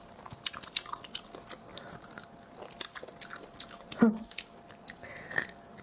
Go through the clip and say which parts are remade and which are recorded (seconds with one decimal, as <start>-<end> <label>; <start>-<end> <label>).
0.0-1.7 recorded; 1.7-2.3 remade; 2.3-5.8 recorded